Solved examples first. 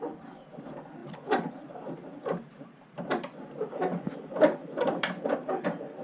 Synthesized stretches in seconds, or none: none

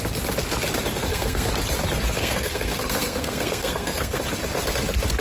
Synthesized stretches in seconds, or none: 1.0-1.5 (codec, SNAC); 2.2-4.2

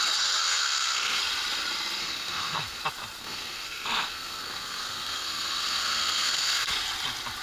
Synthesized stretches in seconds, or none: 0.5-1.2 (codec, SNAC); 2.0-2.8; 3.2-6.7

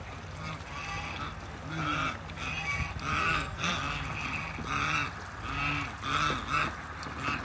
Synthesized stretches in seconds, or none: 3.2-3.7 (codec, SNAC)

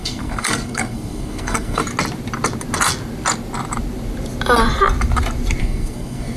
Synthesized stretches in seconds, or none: 0.0-1.8 (codec, SNAC); 5.6-6.4

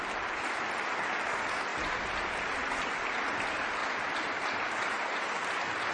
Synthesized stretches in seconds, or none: none

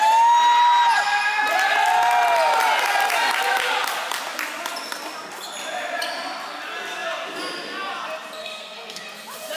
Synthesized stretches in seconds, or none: 8.4-9.0 (codec, SNAC)